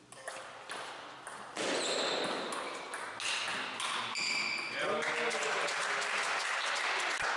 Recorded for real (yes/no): yes